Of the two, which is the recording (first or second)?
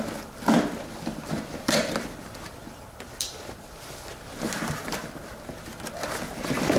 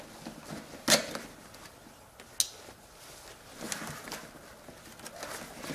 second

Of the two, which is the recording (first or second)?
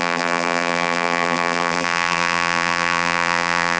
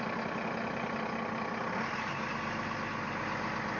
second